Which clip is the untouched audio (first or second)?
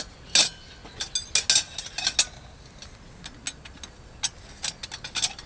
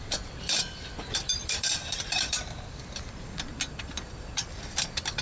first